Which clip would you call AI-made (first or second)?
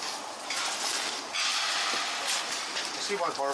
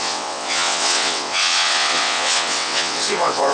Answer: second